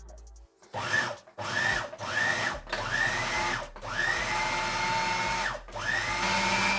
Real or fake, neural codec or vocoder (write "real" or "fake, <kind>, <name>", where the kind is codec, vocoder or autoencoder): real